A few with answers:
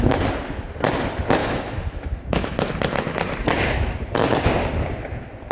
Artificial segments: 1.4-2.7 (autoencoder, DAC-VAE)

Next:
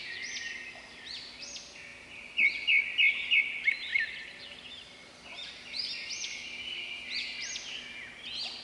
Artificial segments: 3.9-5.5 (vocoder, BigVGAN v2)

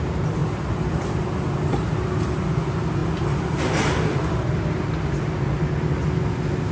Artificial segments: none